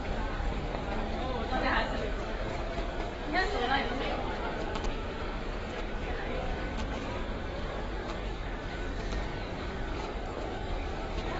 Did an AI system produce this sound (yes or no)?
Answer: yes